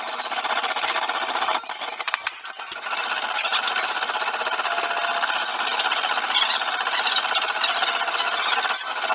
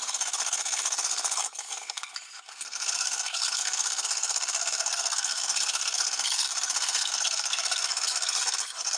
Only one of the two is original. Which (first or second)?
first